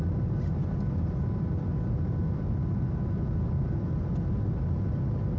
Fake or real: real